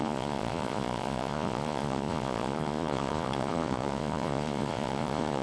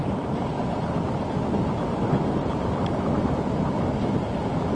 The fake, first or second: first